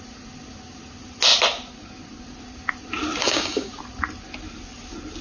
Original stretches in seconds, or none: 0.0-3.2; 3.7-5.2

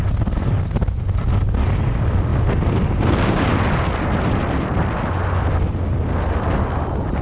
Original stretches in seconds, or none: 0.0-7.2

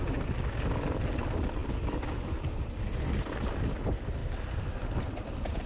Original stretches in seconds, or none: 0.0-5.7

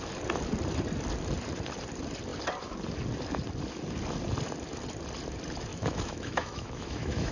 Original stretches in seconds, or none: 0.0-5.7

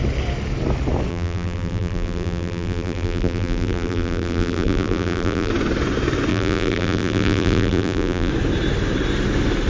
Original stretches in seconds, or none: 0.0-1.1; 5.5-6.3; 8.3-9.7